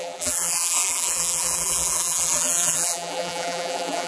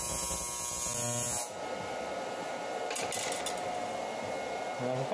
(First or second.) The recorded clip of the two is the second